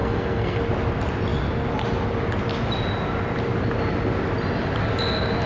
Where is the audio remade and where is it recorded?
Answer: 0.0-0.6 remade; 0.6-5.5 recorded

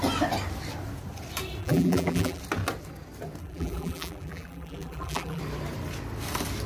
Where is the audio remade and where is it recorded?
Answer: 0.0-1.6 recorded; 1.6-2.4 remade; 2.4-3.4 recorded; 3.4-5.4 remade; 5.4-6.7 recorded

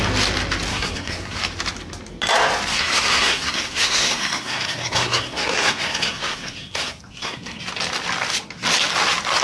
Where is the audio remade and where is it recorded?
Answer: 0.0-0.7 recorded; 0.7-1.4 remade; 1.4-2.7 recorded; 2.7-7.6 remade; 7.6-9.4 recorded

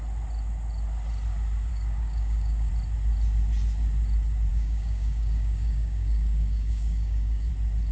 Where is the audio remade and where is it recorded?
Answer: 0.0-1.7 recorded; 1.7-2.7 remade; 2.7-4.5 recorded; 4.5-7.5 remade; 7.5-7.9 recorded